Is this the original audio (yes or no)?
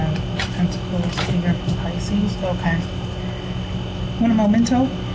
yes